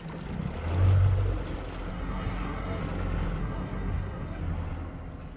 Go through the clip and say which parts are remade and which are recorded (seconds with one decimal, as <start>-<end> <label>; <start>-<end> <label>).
0.0-1.9 recorded; 1.9-2.8 remade; 2.8-3.4 recorded; 3.4-4.4 remade; 4.4-5.4 recorded